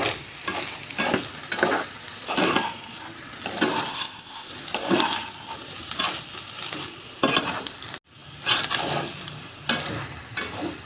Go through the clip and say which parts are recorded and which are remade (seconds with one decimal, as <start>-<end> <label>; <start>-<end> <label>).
0.0-3.9 recorded; 3.9-4.5 remade; 4.5-10.9 recorded